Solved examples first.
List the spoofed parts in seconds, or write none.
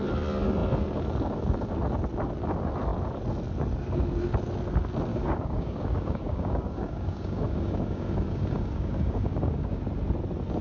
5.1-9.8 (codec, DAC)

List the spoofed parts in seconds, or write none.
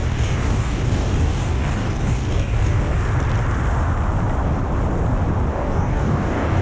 0.0-3.0 (codec, DAC); 5.5-6.6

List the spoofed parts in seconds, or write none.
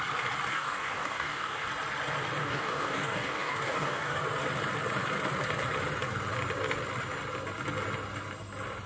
0.5-1.7 (codec, DAC); 2.4-4.2